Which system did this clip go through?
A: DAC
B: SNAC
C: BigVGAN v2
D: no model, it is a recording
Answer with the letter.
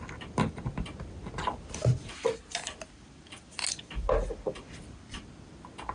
D